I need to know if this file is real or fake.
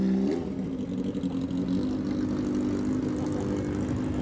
real